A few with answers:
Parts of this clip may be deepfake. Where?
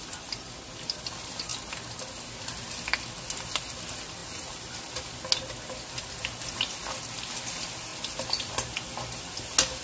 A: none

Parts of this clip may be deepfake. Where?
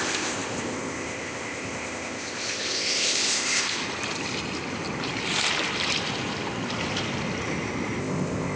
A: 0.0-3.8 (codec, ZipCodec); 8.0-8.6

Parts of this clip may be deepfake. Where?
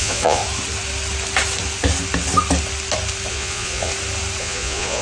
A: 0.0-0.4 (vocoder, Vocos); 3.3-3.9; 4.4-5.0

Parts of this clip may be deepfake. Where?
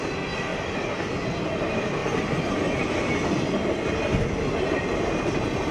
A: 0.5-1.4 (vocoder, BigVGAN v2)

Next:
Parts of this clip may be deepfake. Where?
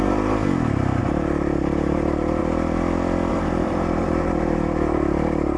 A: 0.0-0.4 (vocoder, BigVGAN v2); 1.0-2.4; 3.3-5.6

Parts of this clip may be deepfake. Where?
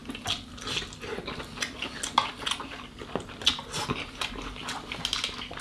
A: none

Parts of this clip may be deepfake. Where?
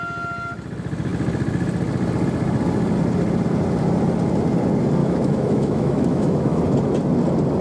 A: 5.0-6.6 (autoencoder, DAC-VAE)